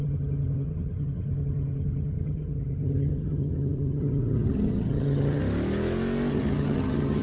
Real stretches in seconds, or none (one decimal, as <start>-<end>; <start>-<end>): 5.4-6.3